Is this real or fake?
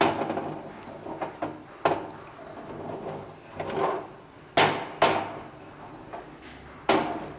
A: real